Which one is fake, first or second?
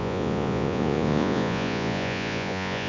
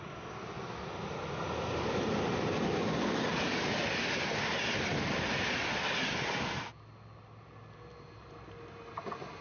first